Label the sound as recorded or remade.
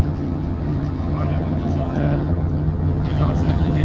remade